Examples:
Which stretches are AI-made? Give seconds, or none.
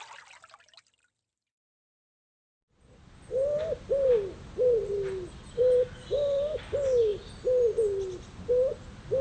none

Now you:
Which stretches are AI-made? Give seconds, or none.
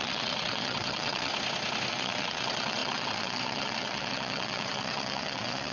0.0-1.3; 1.9-5.7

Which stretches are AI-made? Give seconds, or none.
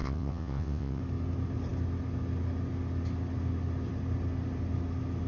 0.0-1.0